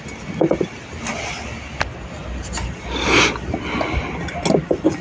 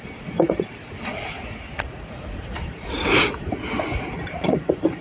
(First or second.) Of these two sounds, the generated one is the second